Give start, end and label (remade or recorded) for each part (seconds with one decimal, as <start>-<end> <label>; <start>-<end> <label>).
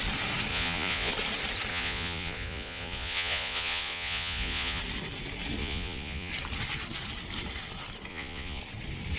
0.0-0.5 recorded; 0.5-1.1 remade; 1.1-1.7 recorded; 1.7-4.8 remade; 4.8-5.6 recorded; 5.6-6.3 remade; 6.3-8.1 recorded; 8.1-8.6 remade; 8.6-9.2 recorded